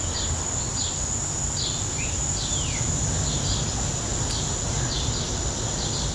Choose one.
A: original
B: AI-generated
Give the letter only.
A